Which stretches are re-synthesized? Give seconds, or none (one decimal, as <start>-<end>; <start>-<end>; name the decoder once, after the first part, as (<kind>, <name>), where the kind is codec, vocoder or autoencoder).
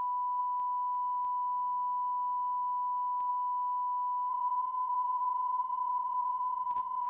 4.3-7.1 (vocoder, Vocos)